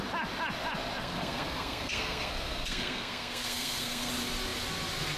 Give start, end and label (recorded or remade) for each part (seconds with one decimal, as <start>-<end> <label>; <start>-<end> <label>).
0.0-1.0 recorded; 1.0-4.1 remade; 4.1-5.2 recorded